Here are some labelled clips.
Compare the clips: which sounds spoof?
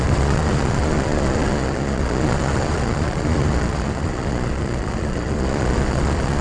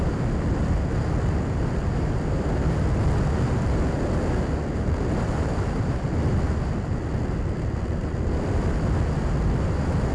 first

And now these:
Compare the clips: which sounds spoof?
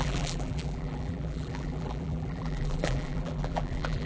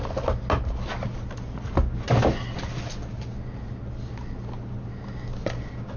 first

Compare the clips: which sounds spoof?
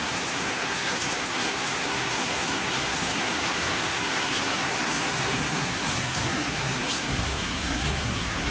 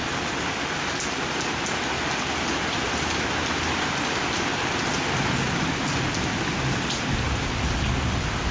first